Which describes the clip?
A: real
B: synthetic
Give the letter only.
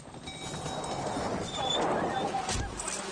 A